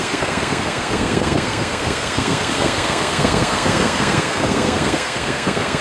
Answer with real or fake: fake